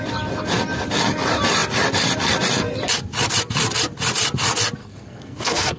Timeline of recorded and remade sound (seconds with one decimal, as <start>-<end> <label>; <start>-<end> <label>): 0.0-4.8 recorded; 4.8-5.8 remade